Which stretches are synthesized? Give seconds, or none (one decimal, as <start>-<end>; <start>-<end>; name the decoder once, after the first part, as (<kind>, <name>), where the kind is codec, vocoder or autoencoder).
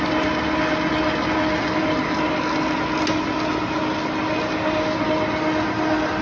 none